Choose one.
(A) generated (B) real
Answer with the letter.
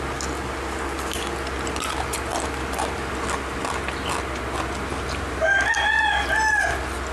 B